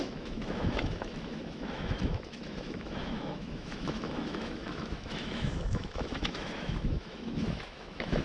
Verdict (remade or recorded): remade